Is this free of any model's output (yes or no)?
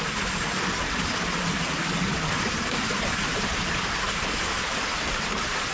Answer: no